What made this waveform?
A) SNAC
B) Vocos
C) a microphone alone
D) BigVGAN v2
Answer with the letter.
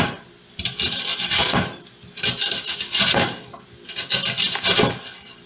C